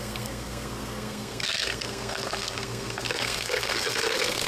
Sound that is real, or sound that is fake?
fake